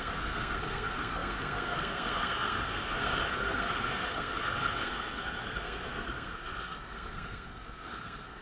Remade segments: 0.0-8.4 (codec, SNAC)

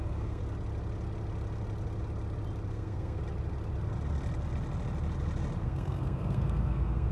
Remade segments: 0.0-0.4 (codec, SNAC); 2.7-3.2; 5.6-7.1

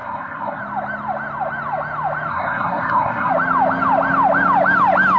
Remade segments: 0.0-0.6 (codec, SNAC); 2.3-3.3

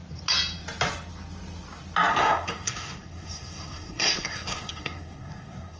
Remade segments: 2.1-5.8 (codec, SNAC)